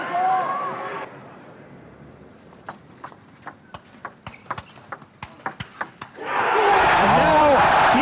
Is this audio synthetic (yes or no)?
yes